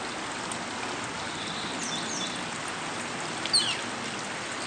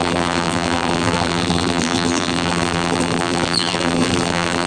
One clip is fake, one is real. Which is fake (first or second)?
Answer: second